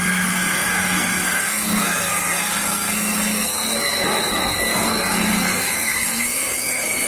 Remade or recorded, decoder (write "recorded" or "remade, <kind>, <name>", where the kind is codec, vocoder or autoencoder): remade, codec, SNAC